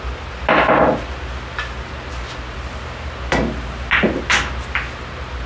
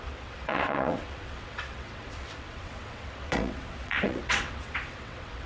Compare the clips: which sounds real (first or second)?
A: first